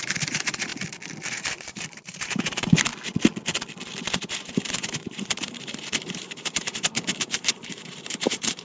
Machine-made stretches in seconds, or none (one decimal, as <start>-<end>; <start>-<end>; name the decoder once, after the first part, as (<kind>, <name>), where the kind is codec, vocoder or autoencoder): 0.0-0.7 (vocoder, BigVGAN v2); 1.3-2.9; 4.1-8.6